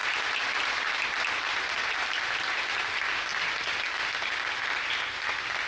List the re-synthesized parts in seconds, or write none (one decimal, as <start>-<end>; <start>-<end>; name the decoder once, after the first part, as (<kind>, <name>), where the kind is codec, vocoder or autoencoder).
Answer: none